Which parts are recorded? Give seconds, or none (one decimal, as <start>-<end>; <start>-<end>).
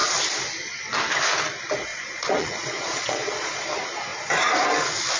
0.0-1.9; 3.6-5.2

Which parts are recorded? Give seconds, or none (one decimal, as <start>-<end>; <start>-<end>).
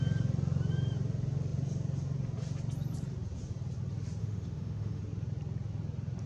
0.0-4.2; 5.0-6.3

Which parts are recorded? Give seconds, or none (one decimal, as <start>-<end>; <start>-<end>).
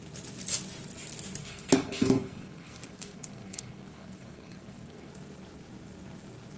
0.0-1.4; 5.1-6.6